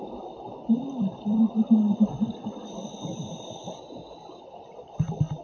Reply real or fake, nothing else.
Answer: fake